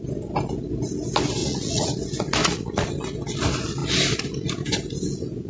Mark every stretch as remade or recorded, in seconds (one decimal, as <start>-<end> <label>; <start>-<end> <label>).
0.0-1.4 recorded; 1.4-1.9 remade; 1.9-2.4 recorded; 2.4-2.9 remade; 2.9-5.5 recorded